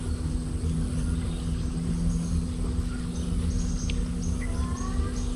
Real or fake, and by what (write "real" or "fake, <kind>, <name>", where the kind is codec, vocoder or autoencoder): real